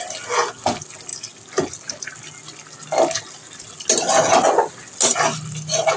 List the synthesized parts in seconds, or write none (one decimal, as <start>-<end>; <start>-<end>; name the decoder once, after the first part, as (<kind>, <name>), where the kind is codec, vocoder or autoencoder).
none